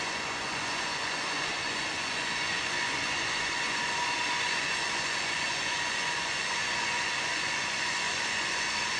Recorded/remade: remade